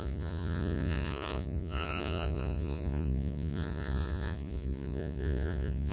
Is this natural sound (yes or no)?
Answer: no